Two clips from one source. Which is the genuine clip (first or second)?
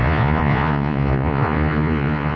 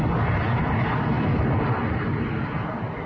second